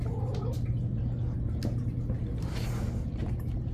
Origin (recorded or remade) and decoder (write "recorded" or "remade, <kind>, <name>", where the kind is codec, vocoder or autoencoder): recorded